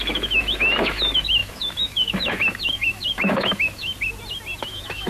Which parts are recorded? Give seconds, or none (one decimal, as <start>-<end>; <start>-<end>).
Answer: 3.9-4.6